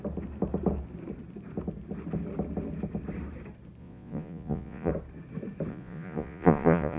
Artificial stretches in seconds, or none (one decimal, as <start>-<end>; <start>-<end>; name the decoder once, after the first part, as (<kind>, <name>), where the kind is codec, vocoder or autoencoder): 3.8-4.9 (vocoder, Vocos); 5.7-7.0